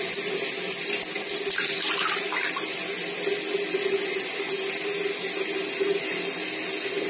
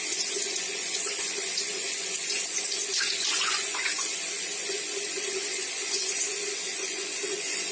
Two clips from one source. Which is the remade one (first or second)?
second